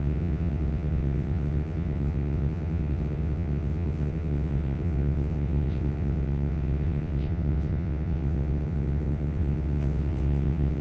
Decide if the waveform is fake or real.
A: fake